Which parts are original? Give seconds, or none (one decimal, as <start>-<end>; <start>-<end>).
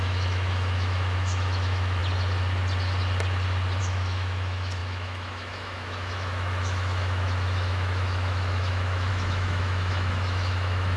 2.0-3.8